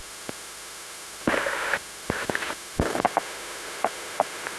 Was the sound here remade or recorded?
remade